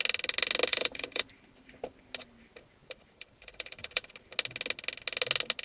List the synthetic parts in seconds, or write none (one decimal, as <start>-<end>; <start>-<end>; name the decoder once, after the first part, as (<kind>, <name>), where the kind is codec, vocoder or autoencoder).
0.7-1.8 (vocoder, BigVGAN v2); 2.8-4.1